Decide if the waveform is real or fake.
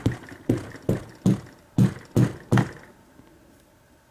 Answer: real